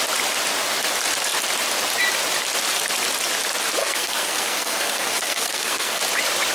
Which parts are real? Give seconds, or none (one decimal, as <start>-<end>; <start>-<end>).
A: 0.0-3.8; 6.0-6.5